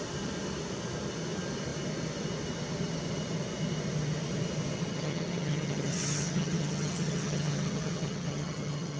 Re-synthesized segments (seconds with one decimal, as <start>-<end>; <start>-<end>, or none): 4.9-9.0